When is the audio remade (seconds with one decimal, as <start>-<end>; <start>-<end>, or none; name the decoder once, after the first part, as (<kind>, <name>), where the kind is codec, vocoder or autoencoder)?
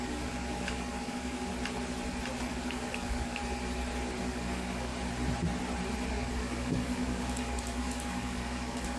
0.0-1.5 (codec, DAC); 2.5-3.4; 4.2-4.9; 6.1-9.0